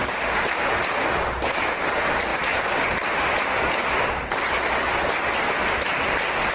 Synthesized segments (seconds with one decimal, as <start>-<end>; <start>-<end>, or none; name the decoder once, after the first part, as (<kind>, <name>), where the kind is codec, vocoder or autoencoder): 0.0-0.9 (vocoder, BigVGAN v2)